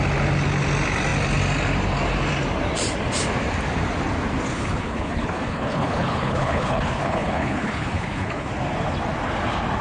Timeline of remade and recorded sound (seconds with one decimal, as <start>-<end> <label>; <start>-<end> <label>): 0.0-4.5 recorded; 4.5-8.5 remade; 8.5-9.8 recorded

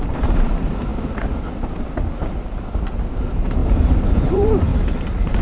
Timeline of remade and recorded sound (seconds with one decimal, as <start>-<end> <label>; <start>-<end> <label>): 0.0-0.9 remade; 0.9-3.2 recorded; 3.2-3.6 remade; 3.6-4.3 recorded; 4.3-4.7 remade; 4.7-5.4 recorded

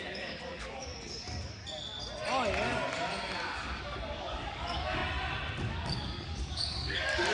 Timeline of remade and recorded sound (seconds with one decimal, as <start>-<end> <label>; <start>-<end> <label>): 0.0-1.6 remade; 1.6-3.5 recorded; 3.5-5.0 remade; 5.0-5.7 recorded; 5.7-7.3 remade